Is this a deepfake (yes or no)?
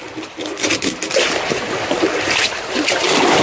yes